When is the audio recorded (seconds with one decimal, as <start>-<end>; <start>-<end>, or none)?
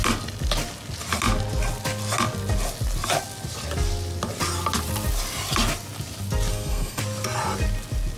0.0-6.5; 7.0-8.2